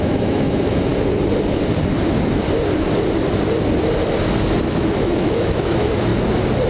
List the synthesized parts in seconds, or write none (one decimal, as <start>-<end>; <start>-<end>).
0.0-0.9; 4.7-6.1